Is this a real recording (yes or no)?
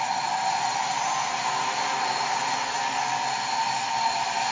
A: yes